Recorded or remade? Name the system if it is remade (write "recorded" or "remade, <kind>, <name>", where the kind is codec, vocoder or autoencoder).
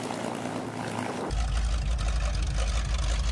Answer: recorded